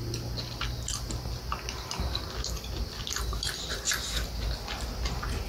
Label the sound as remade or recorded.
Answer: recorded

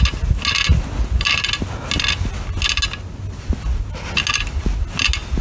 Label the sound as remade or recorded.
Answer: recorded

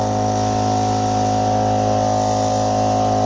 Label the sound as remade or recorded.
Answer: recorded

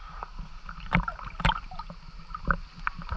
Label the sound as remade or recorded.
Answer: recorded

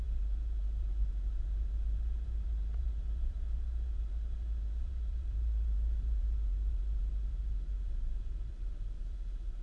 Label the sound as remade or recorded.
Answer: remade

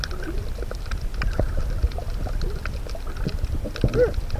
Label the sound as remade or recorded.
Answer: recorded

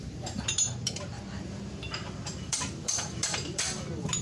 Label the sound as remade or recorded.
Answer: remade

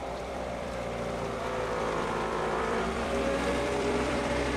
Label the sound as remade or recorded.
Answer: remade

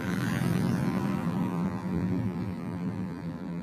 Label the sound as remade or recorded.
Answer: remade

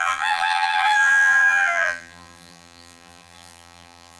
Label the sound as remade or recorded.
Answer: remade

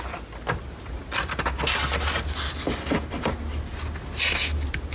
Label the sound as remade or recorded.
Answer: recorded